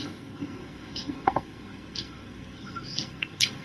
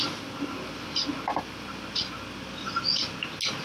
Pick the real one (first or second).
second